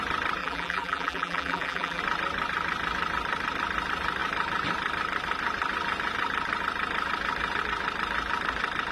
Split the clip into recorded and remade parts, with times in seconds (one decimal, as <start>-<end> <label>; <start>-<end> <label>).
0.0-0.4 recorded; 0.4-2.0 remade; 2.0-8.9 recorded